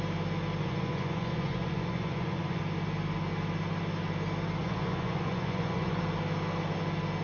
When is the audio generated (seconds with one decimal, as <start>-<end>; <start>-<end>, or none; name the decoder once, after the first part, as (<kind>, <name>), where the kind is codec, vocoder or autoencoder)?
0.6-2.6 (vocoder, Vocos); 4.6-6.0